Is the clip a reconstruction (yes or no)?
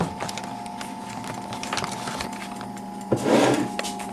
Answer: no